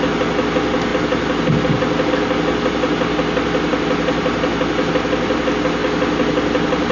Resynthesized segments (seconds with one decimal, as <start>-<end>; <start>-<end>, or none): none